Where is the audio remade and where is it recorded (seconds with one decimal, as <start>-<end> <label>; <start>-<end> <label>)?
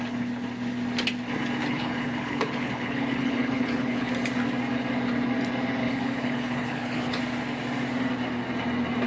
0.0-1.6 recorded; 1.6-4.1 remade; 4.1-5.8 recorded; 5.8-7.2 remade; 7.2-9.1 recorded